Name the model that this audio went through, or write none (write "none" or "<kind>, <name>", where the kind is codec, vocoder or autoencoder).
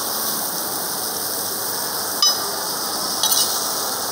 none